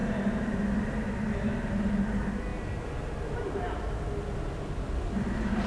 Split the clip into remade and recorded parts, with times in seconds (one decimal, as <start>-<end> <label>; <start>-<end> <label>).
0.0-5.7 recorded